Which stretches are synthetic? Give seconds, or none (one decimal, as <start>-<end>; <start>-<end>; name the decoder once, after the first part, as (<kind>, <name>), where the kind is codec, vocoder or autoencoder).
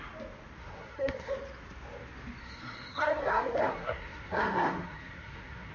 0.6-1.3 (codec, SNAC); 2.4-5.7